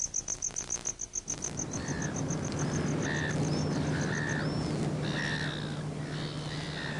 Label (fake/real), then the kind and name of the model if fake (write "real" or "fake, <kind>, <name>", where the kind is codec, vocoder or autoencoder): real